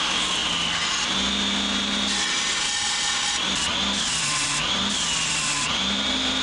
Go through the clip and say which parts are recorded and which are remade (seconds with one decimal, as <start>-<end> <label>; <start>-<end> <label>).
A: 0.0-6.4 recorded